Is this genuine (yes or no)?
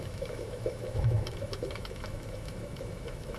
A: no